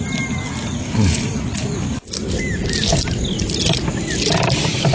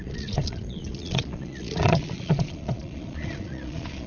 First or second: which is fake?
second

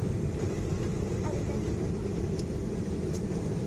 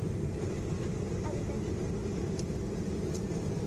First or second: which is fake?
first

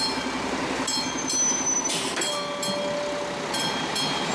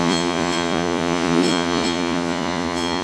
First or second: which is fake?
second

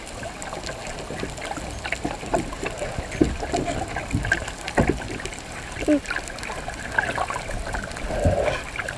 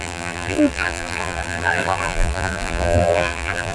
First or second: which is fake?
second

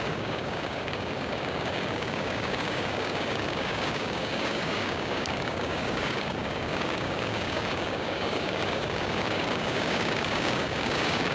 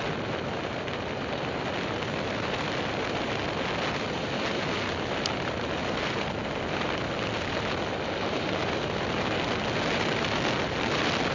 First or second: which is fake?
first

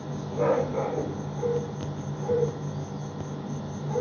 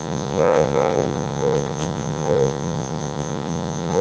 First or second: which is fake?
second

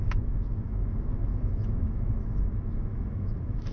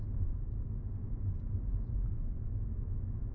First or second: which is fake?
first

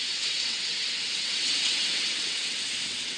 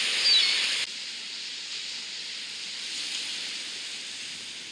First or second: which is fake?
first